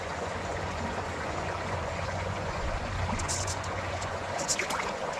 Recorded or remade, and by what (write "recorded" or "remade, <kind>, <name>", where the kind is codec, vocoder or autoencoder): remade, vocoder, Vocos